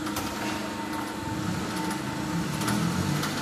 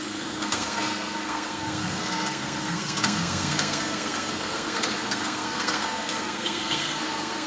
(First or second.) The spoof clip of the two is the second